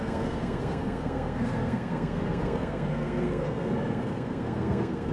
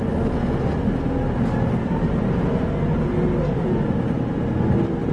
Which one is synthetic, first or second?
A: first